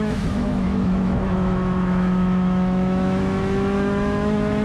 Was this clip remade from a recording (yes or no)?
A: yes